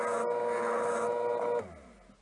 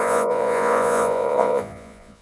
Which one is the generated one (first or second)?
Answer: second